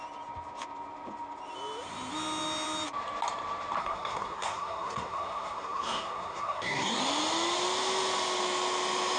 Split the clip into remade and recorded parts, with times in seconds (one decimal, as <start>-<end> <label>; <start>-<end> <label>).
0.0-3.8 recorded; 3.8-7.0 remade; 7.0-9.2 recorded